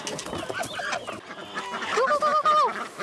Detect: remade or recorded recorded